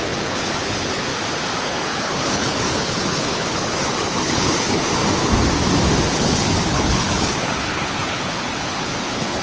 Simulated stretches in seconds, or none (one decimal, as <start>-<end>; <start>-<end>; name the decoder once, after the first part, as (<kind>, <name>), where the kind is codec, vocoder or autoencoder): 0.0-1.1 (codec, HILCodec); 1.6-5.0; 6.1-9.4